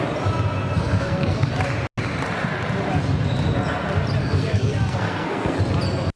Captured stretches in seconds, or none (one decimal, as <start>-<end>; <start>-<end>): 0.0-0.8; 1.5-4.2; 5.6-6.2